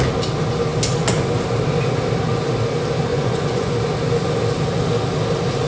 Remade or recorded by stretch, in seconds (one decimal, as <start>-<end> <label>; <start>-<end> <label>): 0.0-3.1 recorded; 3.1-3.7 remade; 3.7-5.7 recorded